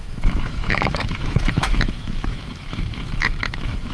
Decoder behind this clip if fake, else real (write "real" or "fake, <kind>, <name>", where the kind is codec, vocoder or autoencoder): fake, autoencoder, DAC-VAE